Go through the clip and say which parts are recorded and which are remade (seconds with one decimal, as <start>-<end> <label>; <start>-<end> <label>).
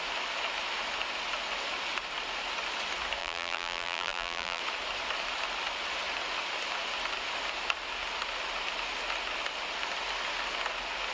0.0-3.2 recorded; 3.2-4.6 remade; 4.6-11.1 recorded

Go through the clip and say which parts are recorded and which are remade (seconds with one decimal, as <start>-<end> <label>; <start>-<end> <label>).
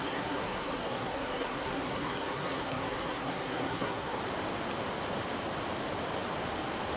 0.0-4.2 remade; 4.2-7.0 recorded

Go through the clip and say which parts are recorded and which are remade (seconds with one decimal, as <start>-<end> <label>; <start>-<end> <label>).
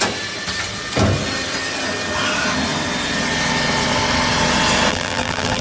0.0-4.9 recorded; 4.9-5.6 remade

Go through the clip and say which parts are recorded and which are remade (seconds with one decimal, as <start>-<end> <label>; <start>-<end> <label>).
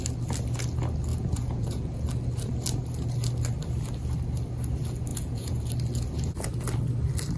0.0-1.1 recorded; 1.1-2.1 remade; 2.1-5.1 recorded; 5.1-5.7 remade; 5.7-7.4 recorded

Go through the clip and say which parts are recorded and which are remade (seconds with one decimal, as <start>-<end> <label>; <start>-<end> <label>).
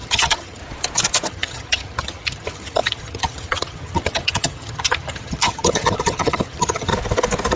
0.0-0.6 remade; 0.6-1.3 recorded; 1.3-6.9 remade; 6.9-7.6 recorded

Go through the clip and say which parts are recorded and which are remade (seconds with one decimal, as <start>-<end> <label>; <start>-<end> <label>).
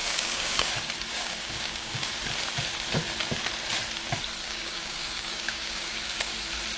0.0-0.7 remade; 0.7-1.1 recorded; 1.1-2.1 remade; 2.1-4.4 recorded; 4.4-6.3 remade; 6.3-6.8 recorded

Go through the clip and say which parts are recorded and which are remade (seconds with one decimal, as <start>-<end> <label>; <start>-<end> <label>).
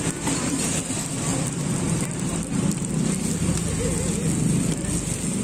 0.0-1.3 recorded; 1.3-2.9 remade; 2.9-5.4 recorded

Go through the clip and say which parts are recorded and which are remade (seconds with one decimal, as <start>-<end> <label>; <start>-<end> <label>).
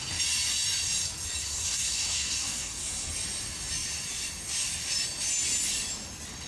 0.0-1.4 recorded; 1.4-3.1 remade; 3.1-6.5 recorded